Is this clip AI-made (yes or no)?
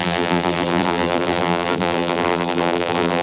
yes